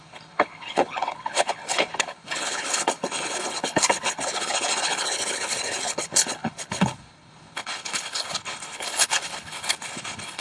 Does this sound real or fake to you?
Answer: fake